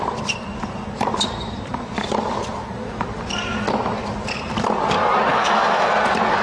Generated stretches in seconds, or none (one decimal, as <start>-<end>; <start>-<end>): 5.3-5.9